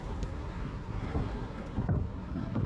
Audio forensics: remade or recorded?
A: remade